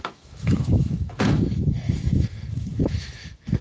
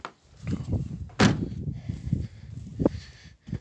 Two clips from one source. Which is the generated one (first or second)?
first